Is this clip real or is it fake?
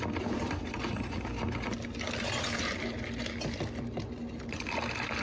real